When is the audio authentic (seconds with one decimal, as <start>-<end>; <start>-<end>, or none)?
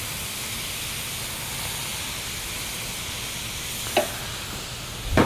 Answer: 0.0-5.3